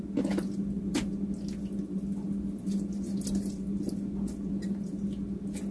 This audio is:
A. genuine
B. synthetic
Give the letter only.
A